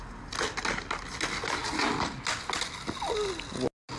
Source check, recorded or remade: recorded